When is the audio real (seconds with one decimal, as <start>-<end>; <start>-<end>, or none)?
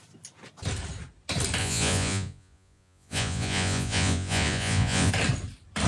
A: 0.0-1.6; 5.1-5.9